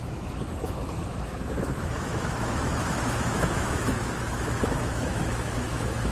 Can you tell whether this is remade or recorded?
remade